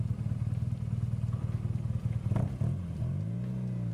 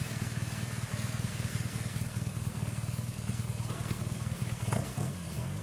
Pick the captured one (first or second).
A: first